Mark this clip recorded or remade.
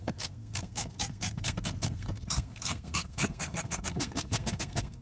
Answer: remade